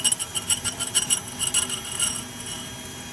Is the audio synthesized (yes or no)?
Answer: no